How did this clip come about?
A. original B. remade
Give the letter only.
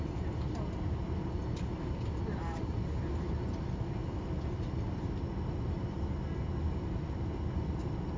A